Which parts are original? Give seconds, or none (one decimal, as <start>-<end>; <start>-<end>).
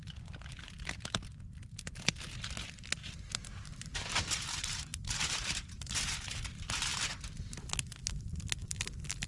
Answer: 0.0-4.9; 6.7-9.3